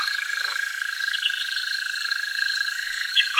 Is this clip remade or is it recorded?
remade